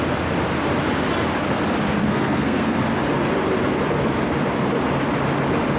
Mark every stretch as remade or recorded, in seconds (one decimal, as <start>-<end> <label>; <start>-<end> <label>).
0.0-2.0 recorded; 2.0-2.8 remade; 2.8-5.8 recorded